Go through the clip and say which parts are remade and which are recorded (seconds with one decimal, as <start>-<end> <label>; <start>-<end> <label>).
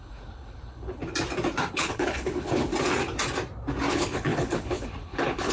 0.0-1.0 remade; 1.0-1.7 recorded; 1.7-2.7 remade; 2.7-3.9 recorded; 3.9-5.5 remade